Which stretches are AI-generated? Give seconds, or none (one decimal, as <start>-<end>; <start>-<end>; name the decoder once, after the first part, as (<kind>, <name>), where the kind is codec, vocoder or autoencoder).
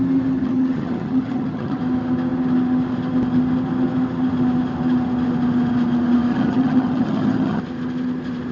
0.4-1.8 (vocoder, HiFi-GAN); 6.3-7.6